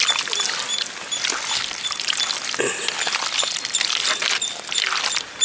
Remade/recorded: recorded